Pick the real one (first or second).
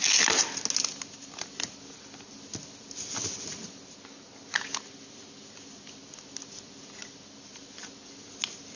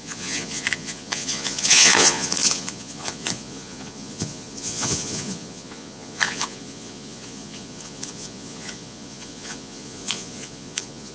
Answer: first